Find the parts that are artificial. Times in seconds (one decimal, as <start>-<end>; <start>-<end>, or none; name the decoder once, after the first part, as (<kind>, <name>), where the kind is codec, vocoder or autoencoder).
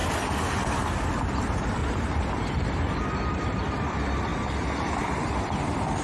0.0-1.8 (vocoder, BigVGAN v2); 2.6-4.3; 4.8-6.0